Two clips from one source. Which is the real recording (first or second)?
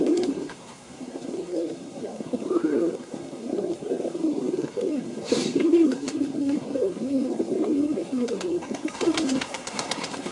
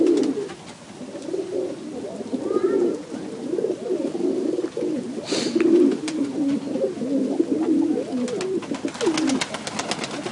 second